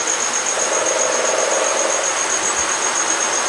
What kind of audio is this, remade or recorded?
recorded